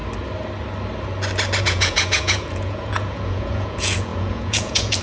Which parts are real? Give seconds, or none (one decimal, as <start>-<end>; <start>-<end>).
0.0-1.6